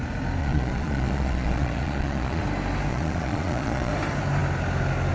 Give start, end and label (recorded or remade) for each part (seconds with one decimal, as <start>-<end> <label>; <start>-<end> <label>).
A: 0.0-0.4 recorded; 0.4-2.4 remade; 2.4-2.9 recorded; 2.9-3.9 remade; 3.9-5.1 recorded